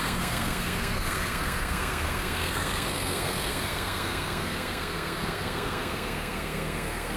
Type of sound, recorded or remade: remade